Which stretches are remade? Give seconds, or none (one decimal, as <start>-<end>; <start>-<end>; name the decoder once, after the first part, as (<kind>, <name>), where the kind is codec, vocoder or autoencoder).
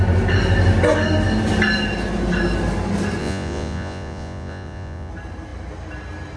3.2-5.1 (vocoder, Vocos)